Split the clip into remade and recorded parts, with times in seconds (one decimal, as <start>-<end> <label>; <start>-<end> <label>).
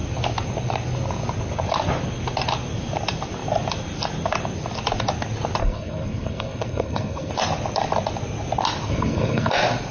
0.0-5.6 recorded; 5.6-7.3 remade; 7.3-8.9 recorded; 8.9-9.5 remade; 9.5-9.9 recorded